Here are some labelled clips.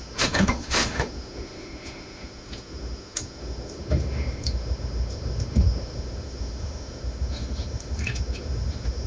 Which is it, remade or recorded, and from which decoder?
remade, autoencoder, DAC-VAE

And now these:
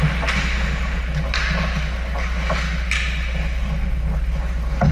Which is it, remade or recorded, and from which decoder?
recorded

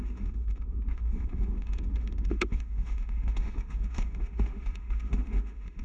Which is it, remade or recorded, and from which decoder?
remade, autoencoder, DAC-VAE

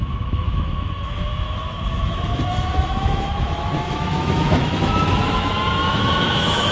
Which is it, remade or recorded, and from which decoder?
remade, autoencoder, DAC-VAE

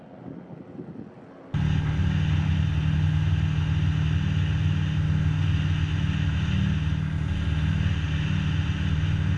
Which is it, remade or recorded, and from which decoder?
recorded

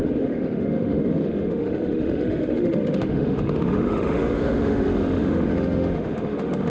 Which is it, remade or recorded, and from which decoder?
remade, autoencoder, DAC-VAE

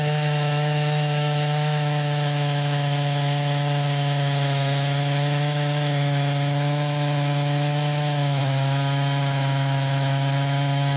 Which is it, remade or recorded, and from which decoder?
remade, autoencoder, DAC-VAE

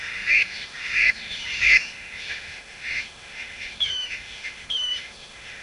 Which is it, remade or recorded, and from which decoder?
remade, autoencoder, DAC-VAE